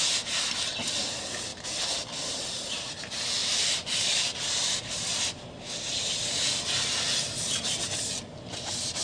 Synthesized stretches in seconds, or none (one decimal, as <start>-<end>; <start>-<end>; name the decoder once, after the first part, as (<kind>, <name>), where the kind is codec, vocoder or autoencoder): 1.5-2.7 (vocoder, BigVGAN v2); 3.4-5.1